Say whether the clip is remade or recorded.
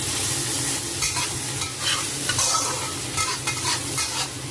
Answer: recorded